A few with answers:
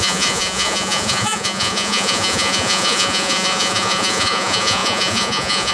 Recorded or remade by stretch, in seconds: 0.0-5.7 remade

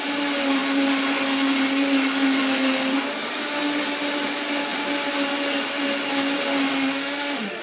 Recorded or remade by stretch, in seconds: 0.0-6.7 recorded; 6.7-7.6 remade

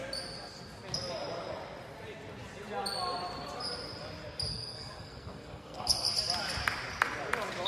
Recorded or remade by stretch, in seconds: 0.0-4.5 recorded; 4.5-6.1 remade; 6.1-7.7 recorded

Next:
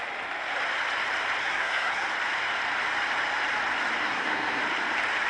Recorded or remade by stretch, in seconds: 0.0-1.4 recorded; 1.4-2.1 remade; 2.1-4.0 recorded; 4.0-4.6 remade; 4.6-5.3 recorded

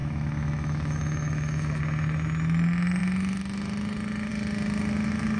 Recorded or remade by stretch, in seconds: 0.0-1.8 remade; 1.8-5.4 recorded